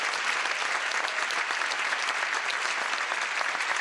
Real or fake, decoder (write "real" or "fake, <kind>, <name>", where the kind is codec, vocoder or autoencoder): real